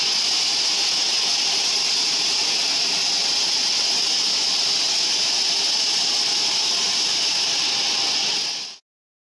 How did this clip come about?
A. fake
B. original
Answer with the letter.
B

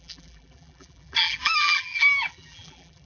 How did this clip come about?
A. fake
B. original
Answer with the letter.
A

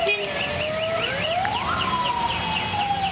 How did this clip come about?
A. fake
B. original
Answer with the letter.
B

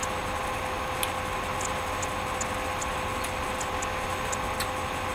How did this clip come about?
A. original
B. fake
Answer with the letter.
A